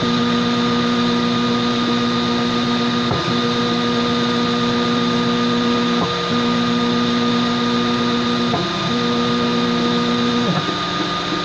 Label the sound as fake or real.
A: real